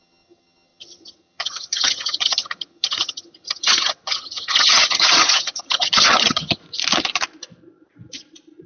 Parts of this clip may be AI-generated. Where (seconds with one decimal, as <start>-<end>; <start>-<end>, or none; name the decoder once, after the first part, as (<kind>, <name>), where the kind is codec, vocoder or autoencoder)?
0.0-6.6 (vocoder, HiFi-GAN)